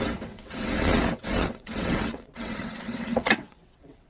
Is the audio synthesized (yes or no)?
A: yes